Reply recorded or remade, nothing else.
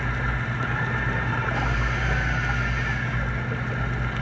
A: recorded